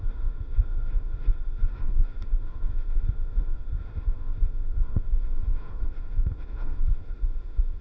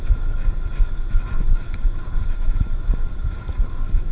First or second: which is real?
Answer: second